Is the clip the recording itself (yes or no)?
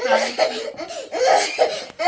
yes